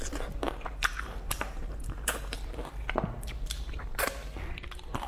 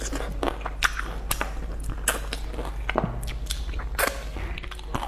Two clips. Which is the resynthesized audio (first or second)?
first